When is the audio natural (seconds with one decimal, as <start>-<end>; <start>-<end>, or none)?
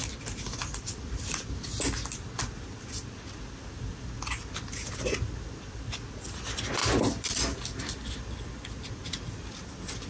0.0-10.1